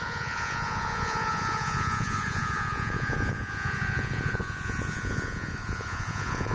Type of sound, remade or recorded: remade